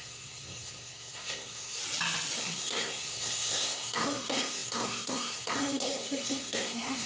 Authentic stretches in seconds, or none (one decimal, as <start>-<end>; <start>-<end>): 1.8-2.4